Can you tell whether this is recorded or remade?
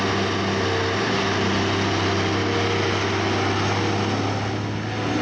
recorded